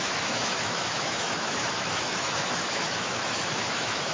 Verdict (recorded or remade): remade